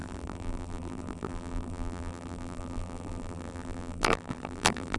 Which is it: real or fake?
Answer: fake